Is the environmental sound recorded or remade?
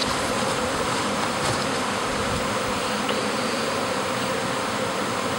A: recorded